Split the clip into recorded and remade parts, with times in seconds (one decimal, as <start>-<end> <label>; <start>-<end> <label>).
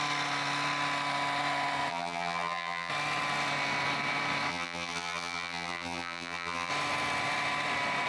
0.0-1.9 recorded; 1.9-2.9 remade; 2.9-4.5 recorded; 4.5-6.7 remade; 6.7-8.1 recorded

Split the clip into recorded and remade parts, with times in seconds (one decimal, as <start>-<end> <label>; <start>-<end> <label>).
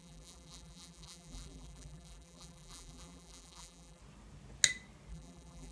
0.0-4.0 remade; 4.0-5.1 recorded; 5.1-5.7 remade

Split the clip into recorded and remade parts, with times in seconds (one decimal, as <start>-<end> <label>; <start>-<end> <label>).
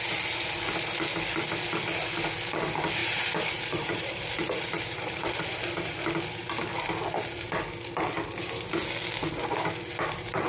0.0-3.0 recorded; 3.0-6.0 remade; 6.0-10.5 recorded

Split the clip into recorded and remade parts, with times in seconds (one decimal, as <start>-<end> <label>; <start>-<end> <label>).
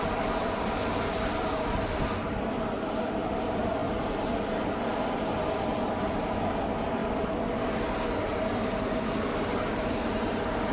0.0-7.0 recorded; 7.0-7.7 remade; 7.7-10.7 recorded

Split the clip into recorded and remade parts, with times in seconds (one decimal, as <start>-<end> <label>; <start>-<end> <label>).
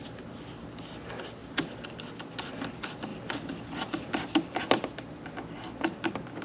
0.0-3.1 recorded; 3.1-4.7 remade; 4.7-6.4 recorded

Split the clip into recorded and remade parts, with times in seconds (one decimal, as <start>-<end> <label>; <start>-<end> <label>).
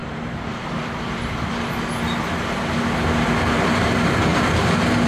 0.0-1.7 remade; 1.7-4.3 recorded; 4.3-5.1 remade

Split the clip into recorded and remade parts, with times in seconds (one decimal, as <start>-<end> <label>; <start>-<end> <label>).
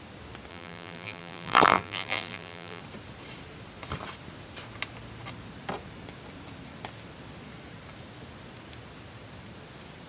0.0-0.5 recorded; 0.5-2.8 remade; 2.8-10.1 recorded